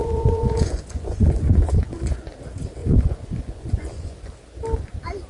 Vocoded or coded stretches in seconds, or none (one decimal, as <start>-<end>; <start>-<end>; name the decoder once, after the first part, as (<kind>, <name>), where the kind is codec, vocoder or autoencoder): 0.0-2.3 (vocoder, Vocos); 2.8-4.3